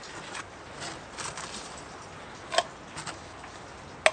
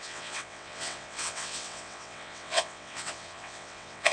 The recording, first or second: first